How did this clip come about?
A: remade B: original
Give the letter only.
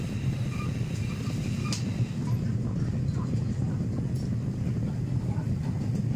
B